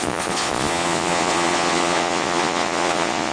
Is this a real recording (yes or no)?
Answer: no